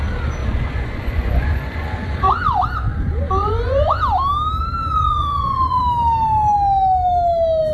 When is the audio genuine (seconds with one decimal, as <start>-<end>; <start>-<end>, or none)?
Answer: 0.0-0.4; 4.0-4.8; 5.8-7.7